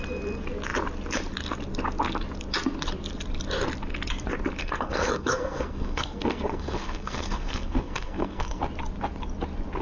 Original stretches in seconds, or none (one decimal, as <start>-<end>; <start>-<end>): 0.0-4.6; 8.6-9.8